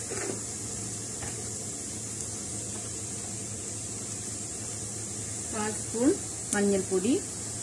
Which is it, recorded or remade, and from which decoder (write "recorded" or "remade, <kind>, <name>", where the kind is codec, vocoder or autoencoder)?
recorded